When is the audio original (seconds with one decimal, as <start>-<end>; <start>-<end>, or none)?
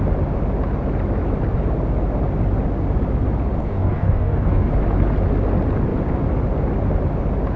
0.0-3.6; 4.7-7.6